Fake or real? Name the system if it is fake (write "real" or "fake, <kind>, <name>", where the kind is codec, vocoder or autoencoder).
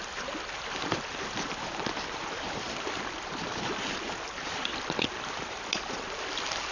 real